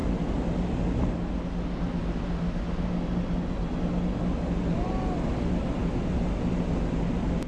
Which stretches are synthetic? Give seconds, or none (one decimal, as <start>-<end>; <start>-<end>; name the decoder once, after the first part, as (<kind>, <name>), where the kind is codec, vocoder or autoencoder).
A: none